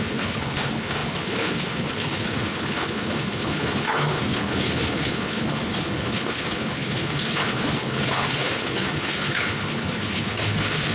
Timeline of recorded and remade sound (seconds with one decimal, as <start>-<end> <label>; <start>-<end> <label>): 0.0-10.9 remade